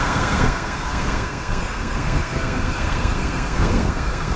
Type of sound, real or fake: fake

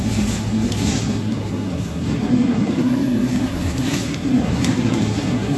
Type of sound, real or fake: fake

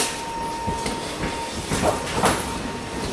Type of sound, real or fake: real